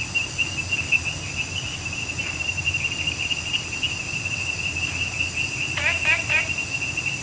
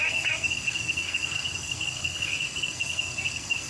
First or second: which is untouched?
first